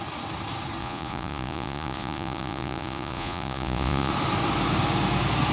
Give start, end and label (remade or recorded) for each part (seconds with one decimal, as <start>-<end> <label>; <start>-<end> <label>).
0.0-0.8 recorded; 0.8-4.1 remade; 4.1-5.5 recorded